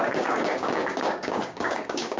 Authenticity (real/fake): fake